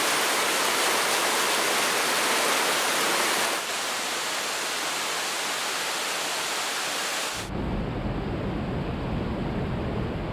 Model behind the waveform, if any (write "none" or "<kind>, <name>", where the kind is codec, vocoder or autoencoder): none